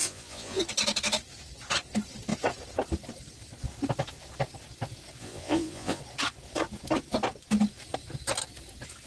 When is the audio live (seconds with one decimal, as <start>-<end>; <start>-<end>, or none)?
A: 0.6-5.2; 6.0-9.1